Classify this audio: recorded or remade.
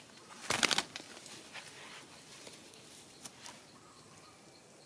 recorded